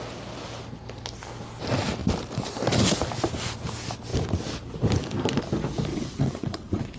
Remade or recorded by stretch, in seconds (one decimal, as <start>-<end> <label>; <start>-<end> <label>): 0.0-5.9 recorded; 5.9-7.0 remade